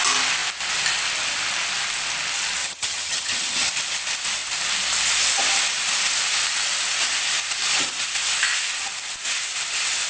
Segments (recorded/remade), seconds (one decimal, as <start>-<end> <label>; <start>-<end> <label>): 0.0-2.6 recorded; 2.6-3.7 remade; 3.7-10.1 recorded